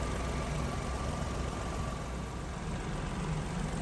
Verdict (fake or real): real